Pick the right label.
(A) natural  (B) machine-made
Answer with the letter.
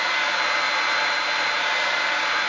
A